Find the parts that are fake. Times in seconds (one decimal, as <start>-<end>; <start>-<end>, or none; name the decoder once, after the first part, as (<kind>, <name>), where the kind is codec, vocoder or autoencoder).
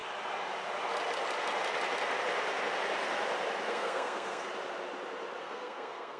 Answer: 3.7-4.5 (codec, SNAC); 5.4-6.2